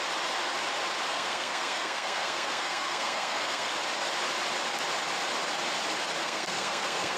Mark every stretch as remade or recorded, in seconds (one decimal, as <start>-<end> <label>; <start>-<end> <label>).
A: 0.0-1.1 recorded; 1.1-3.7 remade; 3.7-6.2 recorded; 6.2-7.2 remade